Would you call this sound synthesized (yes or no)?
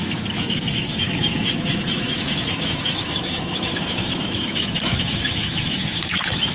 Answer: yes